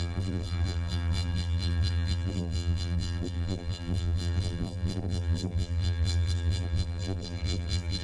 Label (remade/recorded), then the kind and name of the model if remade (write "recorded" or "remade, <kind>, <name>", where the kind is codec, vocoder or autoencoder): remade, vocoder, BigVGAN v2